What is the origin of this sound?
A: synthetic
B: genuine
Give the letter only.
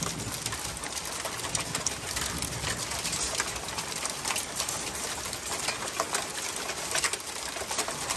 B